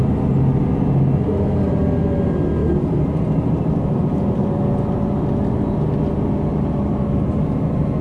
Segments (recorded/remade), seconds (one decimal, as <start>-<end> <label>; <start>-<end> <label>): 0.0-2.6 recorded; 2.6-4.6 remade; 4.6-6.5 recorded; 6.5-7.0 remade; 7.0-8.0 recorded